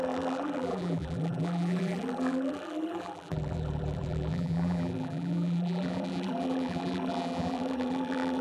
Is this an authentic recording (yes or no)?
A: no